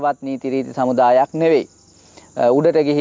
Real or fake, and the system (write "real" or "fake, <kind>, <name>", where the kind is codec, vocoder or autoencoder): real